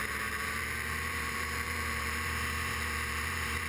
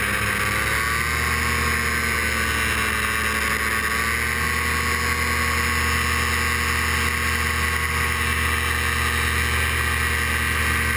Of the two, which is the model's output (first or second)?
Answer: first